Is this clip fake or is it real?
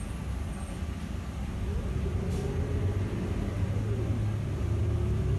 real